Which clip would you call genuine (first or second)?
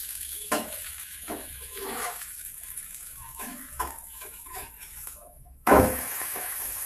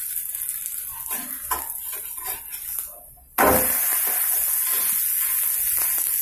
second